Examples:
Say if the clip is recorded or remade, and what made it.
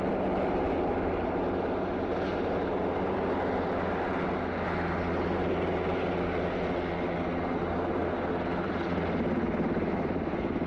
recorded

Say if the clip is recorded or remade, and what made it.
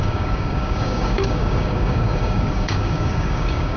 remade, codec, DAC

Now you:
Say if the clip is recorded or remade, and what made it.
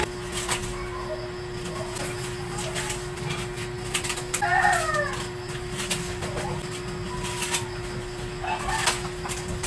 recorded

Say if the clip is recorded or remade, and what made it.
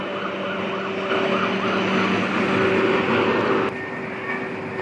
recorded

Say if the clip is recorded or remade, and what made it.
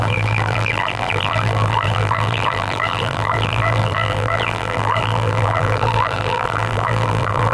remade, vocoder, BigVGAN v2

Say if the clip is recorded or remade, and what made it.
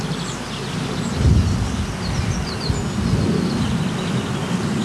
recorded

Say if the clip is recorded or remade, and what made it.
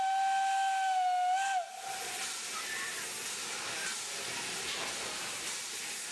recorded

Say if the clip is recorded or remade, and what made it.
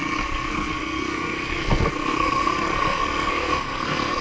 remade, codec, SNAC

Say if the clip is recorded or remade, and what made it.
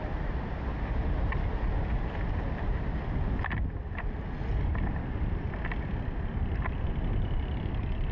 recorded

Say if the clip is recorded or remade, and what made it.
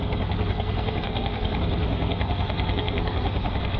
remade, codec, SNAC